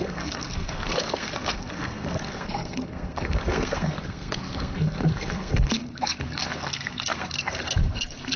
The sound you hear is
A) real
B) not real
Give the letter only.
B